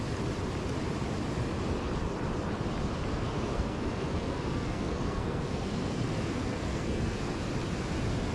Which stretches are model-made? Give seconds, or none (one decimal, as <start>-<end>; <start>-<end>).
3.1-7.4